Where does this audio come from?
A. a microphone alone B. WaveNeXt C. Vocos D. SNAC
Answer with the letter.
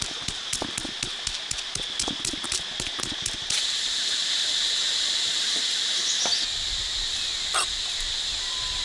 A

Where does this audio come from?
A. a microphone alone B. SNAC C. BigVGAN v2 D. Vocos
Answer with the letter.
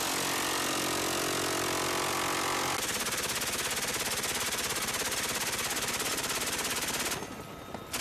A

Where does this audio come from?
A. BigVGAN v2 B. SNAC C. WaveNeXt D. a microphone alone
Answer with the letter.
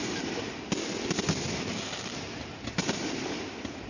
D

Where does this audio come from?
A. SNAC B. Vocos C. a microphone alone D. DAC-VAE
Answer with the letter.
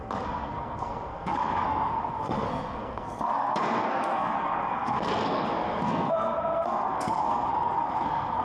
A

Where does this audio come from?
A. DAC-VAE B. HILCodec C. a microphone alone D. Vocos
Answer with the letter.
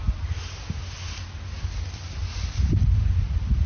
C